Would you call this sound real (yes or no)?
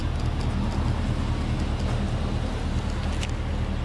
yes